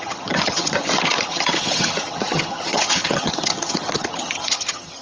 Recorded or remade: remade